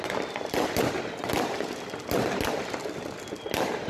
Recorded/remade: recorded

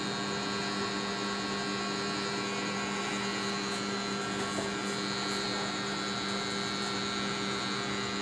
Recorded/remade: recorded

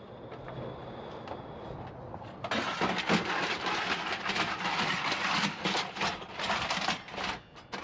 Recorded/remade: recorded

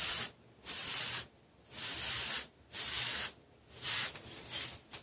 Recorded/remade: remade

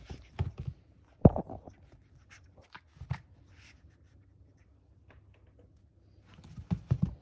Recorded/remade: recorded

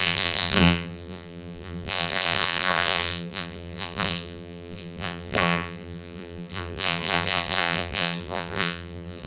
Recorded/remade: remade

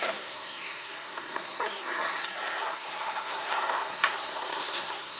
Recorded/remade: remade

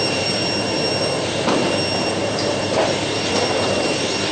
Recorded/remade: remade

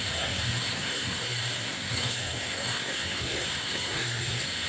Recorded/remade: remade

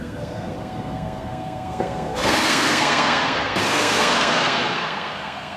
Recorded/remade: remade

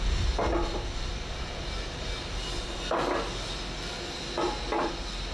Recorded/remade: recorded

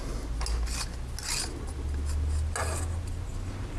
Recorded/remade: recorded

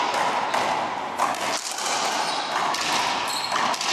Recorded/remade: recorded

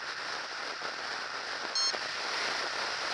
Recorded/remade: recorded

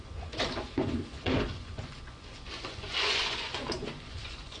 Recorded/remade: remade